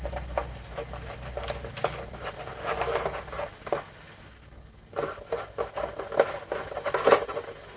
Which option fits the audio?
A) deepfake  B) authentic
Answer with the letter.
B